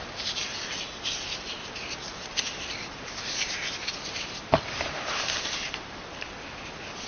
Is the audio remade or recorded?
recorded